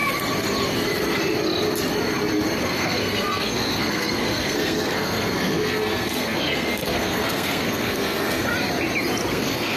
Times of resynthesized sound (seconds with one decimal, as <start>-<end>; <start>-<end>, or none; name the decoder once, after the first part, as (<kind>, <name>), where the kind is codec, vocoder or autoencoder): 2.6-8.5 (codec, SNAC); 9.3-9.8